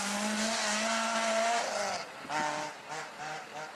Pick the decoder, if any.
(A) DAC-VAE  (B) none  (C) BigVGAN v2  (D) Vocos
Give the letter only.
B